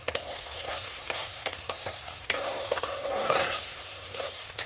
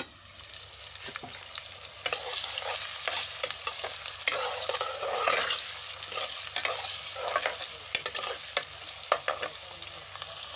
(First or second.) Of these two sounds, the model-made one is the first